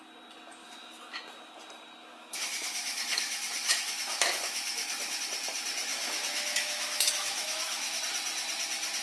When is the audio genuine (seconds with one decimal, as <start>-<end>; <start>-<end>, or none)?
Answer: 0.0-0.6; 1.2-2.1; 5.2-5.9; 8.0-9.0